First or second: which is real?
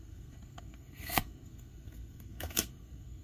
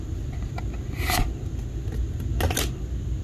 second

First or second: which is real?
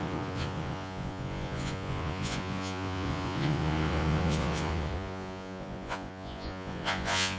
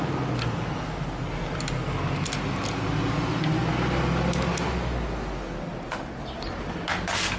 second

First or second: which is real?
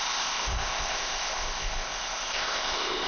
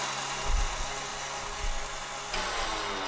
second